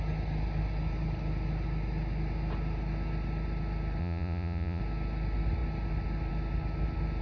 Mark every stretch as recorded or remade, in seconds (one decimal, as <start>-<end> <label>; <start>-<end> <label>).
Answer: 0.0-4.0 recorded; 4.0-4.8 remade; 4.8-7.2 recorded